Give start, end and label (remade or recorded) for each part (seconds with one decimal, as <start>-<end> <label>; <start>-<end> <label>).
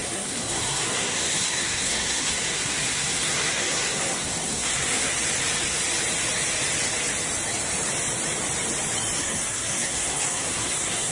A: 0.0-5.1 remade; 5.1-9.2 recorded; 9.2-11.1 remade